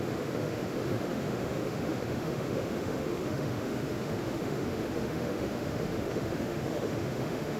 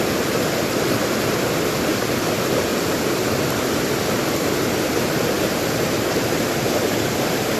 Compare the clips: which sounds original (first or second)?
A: second